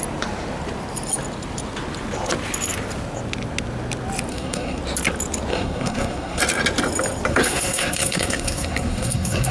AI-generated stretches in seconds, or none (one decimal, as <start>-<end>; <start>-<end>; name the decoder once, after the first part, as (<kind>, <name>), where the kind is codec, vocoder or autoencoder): 4.3-4.8 (codec, SNAC); 5.5-6.4; 7.3-9.5